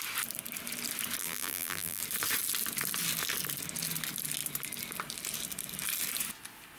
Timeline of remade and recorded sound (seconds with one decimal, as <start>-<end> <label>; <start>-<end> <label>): 0.0-1.2 recorded; 1.2-2.0 remade; 2.0-6.8 recorded